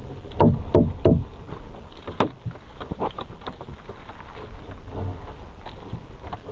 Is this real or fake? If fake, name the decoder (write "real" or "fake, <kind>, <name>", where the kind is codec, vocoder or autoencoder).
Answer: real